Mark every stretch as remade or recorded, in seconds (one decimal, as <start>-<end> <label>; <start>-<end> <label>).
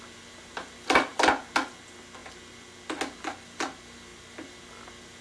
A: 0.0-5.2 recorded